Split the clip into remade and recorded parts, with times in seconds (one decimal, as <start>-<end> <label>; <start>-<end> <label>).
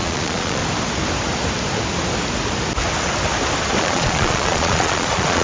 0.0-0.6 remade; 0.6-3.8 recorded; 3.8-5.4 remade